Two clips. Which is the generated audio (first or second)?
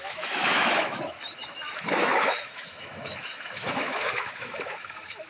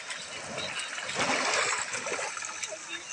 first